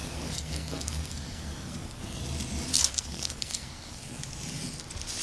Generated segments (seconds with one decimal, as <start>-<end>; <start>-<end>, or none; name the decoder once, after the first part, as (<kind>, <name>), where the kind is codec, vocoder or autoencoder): 0.0-2.2 (codec, SNAC); 2.7-4.2